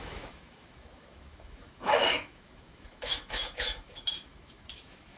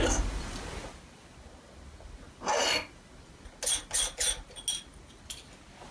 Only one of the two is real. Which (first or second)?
second